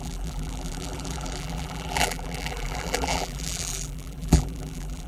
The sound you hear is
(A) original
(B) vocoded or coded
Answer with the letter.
B